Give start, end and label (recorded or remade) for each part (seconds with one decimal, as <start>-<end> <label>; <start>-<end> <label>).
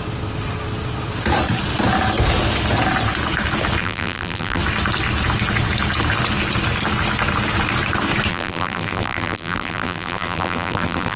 0.0-3.8 recorded; 3.8-4.6 remade; 4.6-8.3 recorded; 8.3-11.2 remade